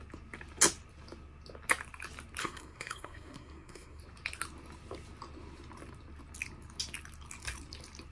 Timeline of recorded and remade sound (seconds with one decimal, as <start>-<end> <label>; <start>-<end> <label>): 0.0-2.4 recorded; 2.4-4.0 remade; 4.0-8.1 recorded